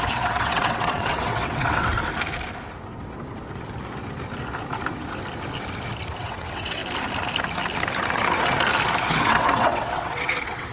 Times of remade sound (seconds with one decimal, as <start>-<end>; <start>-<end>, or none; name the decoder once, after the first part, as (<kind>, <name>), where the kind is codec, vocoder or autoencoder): 0.0-1.9 (vocoder, WaveNeXt); 6.2-6.8; 9.1-10.7